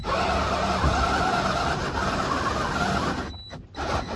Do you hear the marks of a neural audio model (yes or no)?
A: no